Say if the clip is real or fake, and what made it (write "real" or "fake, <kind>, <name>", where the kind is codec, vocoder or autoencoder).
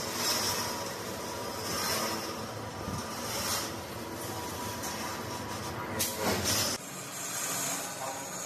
real